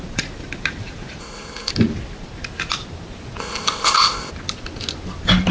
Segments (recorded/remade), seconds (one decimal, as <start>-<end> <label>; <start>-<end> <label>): 0.0-1.2 recorded; 1.2-1.7 remade; 1.7-3.4 recorded; 3.4-4.3 remade; 4.3-5.5 recorded